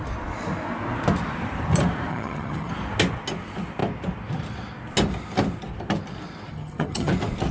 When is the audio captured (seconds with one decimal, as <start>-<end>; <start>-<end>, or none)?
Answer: 0.0-2.1; 2.7-6.5; 7.1-7.5